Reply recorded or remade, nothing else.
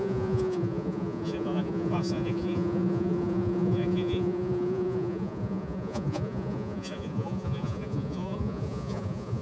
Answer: remade